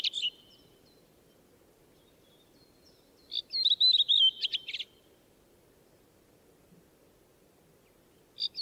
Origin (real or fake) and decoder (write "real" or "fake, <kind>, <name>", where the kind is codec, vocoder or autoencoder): real